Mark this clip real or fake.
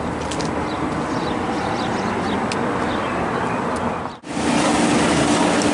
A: real